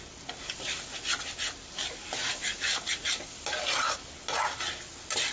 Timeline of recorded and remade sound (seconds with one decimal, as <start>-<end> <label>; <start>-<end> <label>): 0.0-5.3 recorded